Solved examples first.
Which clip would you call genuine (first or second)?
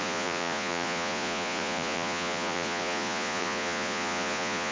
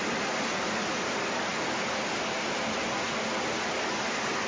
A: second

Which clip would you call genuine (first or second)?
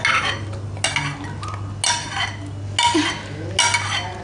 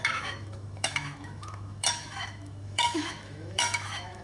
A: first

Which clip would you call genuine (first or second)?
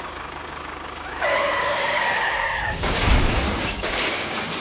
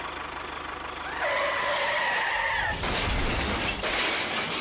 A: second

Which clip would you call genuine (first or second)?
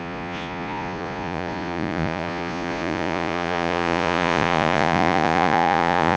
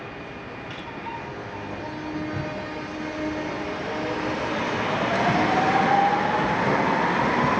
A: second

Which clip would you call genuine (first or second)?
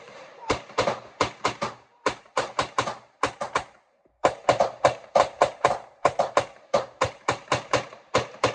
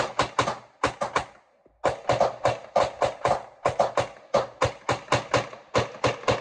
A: second